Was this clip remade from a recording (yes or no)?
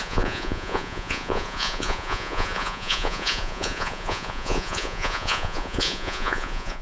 yes